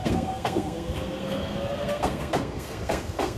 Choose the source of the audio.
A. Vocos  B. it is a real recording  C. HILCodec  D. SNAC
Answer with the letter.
D